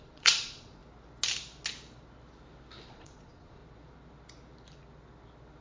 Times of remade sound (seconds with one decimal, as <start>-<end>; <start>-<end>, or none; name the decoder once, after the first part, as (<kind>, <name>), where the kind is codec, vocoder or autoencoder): 0.0-0.8 (vocoder, Vocos); 2.9-3.6